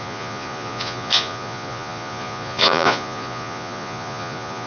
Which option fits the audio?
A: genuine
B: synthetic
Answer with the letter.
B